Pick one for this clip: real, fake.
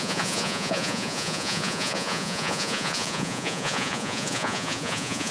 fake